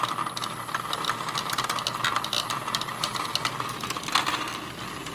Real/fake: real